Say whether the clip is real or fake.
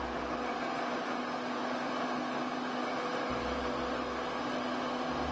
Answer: real